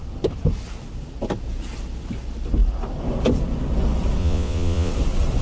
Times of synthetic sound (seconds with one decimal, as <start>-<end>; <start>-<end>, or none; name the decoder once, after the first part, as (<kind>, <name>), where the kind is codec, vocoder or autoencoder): 4.2-4.9 (vocoder, Vocos)